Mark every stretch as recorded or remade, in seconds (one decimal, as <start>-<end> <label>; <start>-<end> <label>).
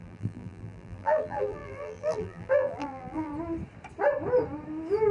0.0-3.3 remade; 3.3-5.1 recorded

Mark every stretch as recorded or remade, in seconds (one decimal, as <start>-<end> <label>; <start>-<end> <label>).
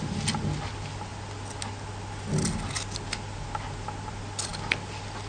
0.0-5.3 recorded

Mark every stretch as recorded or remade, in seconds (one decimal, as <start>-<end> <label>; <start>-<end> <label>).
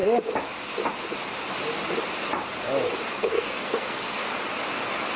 0.0-3.1 recorded; 3.1-4.3 remade; 4.3-5.2 recorded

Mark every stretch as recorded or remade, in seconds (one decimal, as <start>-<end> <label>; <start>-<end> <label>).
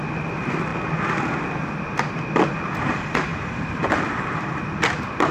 0.0-3.3 recorded; 3.3-4.6 remade; 4.6-5.3 recorded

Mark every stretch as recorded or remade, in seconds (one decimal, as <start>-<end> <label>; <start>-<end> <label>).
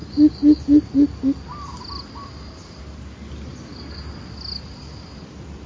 0.0-5.7 recorded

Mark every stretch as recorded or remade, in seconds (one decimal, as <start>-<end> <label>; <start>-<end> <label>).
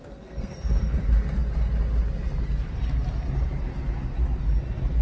0.0-0.6 remade; 0.6-5.0 recorded